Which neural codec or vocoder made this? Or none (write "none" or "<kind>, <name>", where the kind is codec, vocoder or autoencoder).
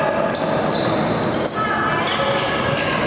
none